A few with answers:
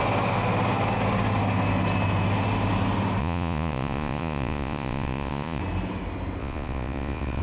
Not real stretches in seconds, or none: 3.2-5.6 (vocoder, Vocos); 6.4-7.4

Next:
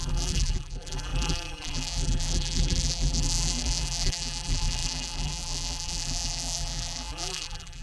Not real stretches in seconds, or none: 0.0-7.8 (vocoder, BigVGAN v2)